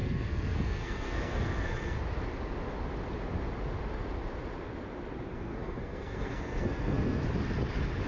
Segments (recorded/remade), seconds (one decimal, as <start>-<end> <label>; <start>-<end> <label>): 0.0-2.0 remade; 2.0-5.3 recorded; 5.3-7.2 remade; 7.2-8.1 recorded

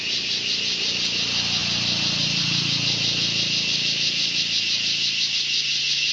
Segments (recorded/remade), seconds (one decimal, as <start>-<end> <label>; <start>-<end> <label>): 0.0-6.1 recorded

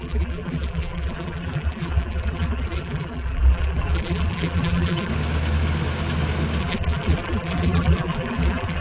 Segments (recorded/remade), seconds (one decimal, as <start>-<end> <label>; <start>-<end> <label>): 0.0-5.1 remade; 5.1-6.6 recorded; 6.6-8.8 remade

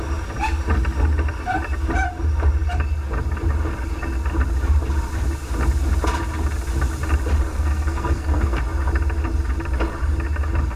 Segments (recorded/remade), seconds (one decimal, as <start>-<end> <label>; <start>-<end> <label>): 0.0-7.5 recorded; 7.5-8.6 remade; 8.6-10.8 recorded

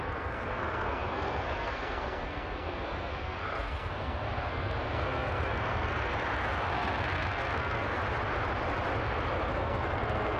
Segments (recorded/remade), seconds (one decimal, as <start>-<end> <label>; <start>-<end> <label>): 0.0-6.1 remade; 6.1-6.7 recorded; 6.7-8.0 remade; 8.0-9.5 recorded; 9.5-10.4 remade

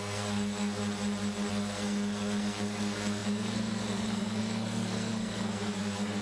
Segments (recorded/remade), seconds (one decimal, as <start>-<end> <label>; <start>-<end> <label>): 0.0-0.8 remade; 0.8-1.5 recorded; 1.5-6.2 remade

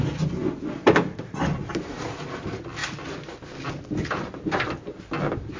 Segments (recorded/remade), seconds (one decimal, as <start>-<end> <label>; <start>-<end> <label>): 0.0-2.8 recorded; 2.8-4.8 remade; 4.8-5.6 recorded